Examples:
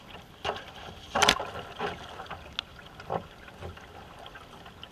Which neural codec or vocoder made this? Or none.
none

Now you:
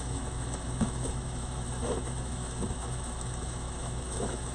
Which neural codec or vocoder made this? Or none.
autoencoder, DAC-VAE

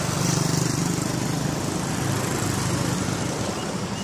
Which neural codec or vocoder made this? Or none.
vocoder, BigVGAN v2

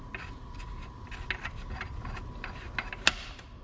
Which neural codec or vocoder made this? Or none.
none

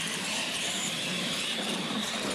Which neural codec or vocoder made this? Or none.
vocoder, BigVGAN v2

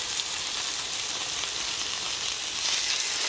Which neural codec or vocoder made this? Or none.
none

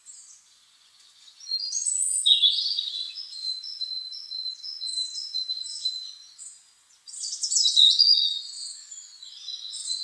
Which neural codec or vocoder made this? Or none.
vocoder, Vocos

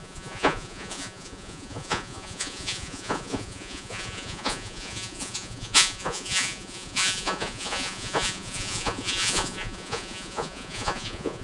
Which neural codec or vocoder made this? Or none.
vocoder, Vocos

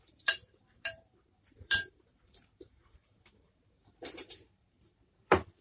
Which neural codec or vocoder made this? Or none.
vocoder, BigVGAN v2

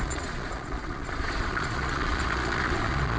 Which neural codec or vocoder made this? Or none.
vocoder, Vocos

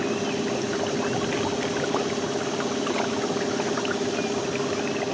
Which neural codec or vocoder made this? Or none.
none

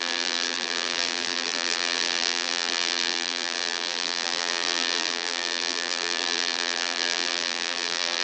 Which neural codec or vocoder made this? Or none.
vocoder, BigVGAN v2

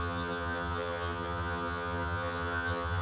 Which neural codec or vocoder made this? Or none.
vocoder, HiFi-GAN